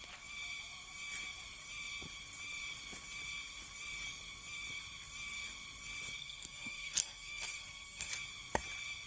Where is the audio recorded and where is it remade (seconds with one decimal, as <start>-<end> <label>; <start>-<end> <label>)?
0.0-6.2 recorded; 6.2-8.1 remade; 8.1-9.1 recorded